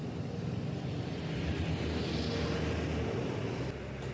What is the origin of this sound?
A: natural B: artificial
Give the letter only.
A